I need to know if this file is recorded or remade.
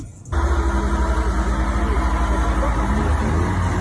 recorded